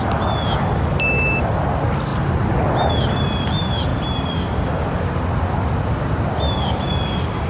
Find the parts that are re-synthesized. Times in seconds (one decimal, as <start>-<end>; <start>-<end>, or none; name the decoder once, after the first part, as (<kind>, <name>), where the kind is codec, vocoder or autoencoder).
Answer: 2.1-2.9 (vocoder, BigVGAN v2)